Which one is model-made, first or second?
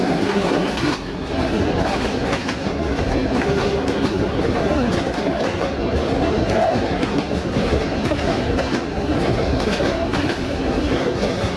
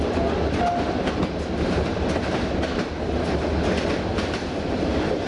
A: first